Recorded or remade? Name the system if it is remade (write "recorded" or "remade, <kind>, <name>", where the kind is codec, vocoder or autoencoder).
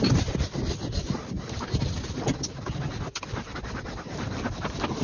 recorded